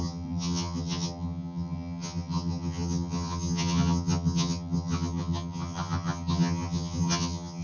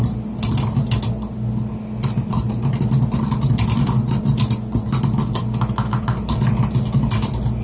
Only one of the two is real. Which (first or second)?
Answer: second